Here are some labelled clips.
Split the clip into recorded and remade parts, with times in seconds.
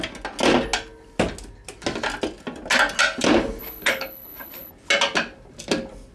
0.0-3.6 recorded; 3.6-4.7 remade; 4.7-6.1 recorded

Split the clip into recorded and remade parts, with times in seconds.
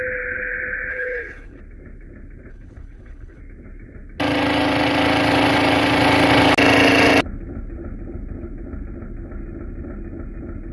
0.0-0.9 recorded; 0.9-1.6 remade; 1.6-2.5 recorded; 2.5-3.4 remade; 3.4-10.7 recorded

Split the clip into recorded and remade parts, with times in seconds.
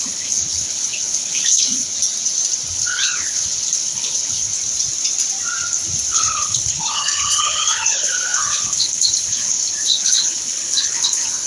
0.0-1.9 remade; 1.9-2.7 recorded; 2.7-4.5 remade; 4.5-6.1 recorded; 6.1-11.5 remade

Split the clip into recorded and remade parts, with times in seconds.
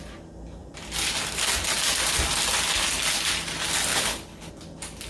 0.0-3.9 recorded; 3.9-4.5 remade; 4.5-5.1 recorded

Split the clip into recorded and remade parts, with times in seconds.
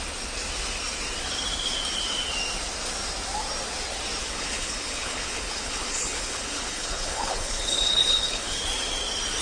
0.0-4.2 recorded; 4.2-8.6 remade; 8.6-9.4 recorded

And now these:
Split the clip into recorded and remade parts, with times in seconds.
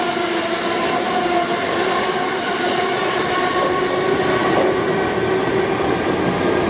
0.0-6.7 recorded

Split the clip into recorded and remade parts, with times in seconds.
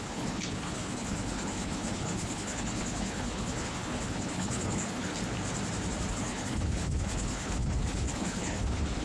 0.0-5.1 remade; 5.1-6.1 recorded; 6.1-9.0 remade